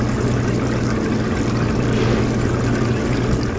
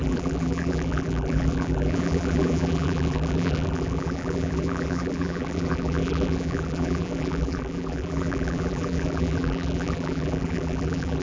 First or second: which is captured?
first